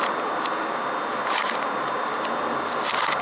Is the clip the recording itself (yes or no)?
yes